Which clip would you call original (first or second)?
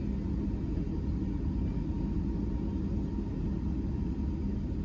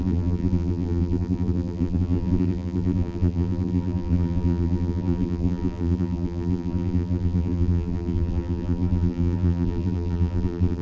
first